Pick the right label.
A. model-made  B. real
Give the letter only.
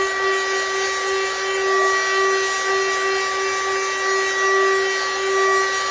B